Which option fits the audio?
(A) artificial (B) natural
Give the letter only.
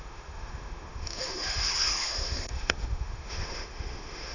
A